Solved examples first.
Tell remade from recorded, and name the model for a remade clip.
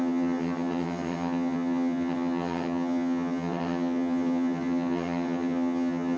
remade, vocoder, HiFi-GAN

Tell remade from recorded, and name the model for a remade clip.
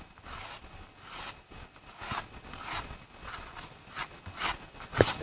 recorded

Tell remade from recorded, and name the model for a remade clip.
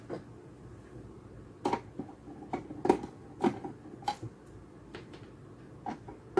recorded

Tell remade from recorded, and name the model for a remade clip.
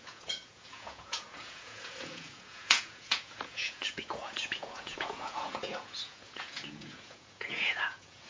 remade, vocoder, Vocos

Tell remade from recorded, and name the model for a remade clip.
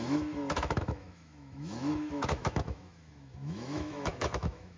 remade, autoencoder, DAC-VAE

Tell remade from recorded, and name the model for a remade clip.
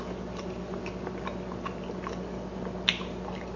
recorded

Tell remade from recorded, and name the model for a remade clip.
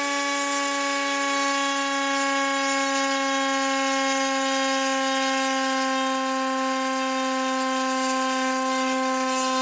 recorded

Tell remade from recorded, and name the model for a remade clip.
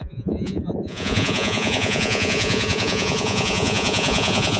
remade, vocoder, Vocos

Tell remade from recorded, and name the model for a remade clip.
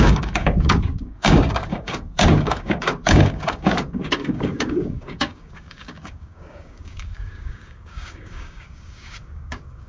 remade, codec, DAC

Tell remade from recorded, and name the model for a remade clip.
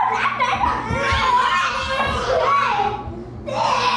recorded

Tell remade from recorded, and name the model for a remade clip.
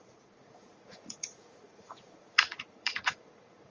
remade, vocoder, Vocos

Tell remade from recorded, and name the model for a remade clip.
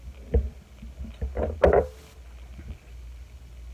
recorded